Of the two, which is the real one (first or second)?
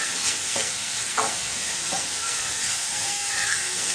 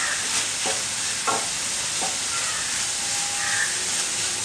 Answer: second